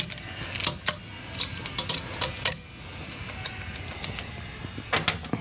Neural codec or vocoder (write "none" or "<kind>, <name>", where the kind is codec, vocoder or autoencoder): none